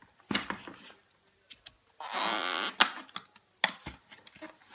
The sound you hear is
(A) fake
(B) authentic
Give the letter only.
B